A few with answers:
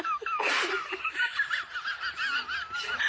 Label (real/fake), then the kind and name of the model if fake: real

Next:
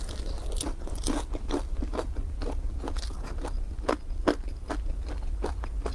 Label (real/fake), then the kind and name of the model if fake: real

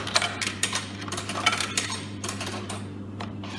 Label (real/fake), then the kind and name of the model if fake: fake, vocoder, BigVGAN v2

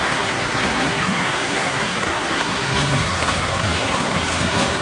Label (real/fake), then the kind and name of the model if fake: fake, codec, SNAC